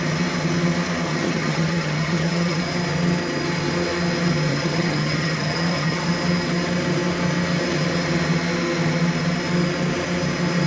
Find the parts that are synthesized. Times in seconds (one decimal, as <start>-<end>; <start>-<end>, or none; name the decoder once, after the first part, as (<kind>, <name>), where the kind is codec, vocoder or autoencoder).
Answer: 1.1-2.6 (vocoder, HiFi-GAN); 4.5-6.1